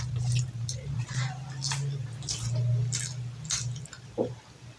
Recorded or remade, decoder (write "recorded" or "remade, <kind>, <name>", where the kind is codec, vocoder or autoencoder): recorded